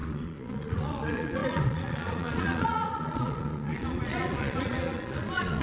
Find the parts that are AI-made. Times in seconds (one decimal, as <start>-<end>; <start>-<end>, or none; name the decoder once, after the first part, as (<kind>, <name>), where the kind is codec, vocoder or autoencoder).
0.0-5.6 (vocoder, Vocos)

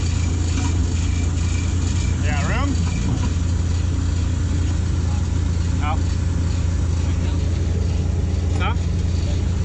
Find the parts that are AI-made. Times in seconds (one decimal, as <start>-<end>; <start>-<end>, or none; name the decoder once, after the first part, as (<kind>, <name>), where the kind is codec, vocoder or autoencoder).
none

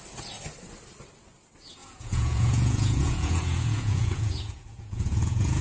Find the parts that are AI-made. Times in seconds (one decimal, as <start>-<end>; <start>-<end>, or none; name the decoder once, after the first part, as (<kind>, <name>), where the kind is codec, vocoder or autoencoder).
1.8-5.6 (vocoder, Vocos)

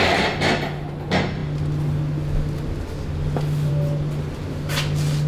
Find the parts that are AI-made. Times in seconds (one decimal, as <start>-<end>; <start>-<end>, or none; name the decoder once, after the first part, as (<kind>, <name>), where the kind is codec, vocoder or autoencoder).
none

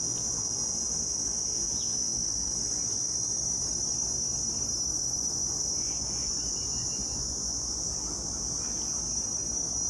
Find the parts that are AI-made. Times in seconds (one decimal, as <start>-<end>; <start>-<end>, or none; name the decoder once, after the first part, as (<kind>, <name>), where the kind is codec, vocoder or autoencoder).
4.9-7.8 (vocoder, Vocos)

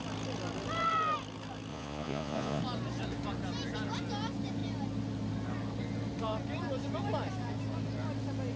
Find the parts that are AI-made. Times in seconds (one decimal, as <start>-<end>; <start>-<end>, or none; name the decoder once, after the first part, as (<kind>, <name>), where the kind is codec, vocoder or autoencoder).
1.7-2.6 (vocoder, Vocos)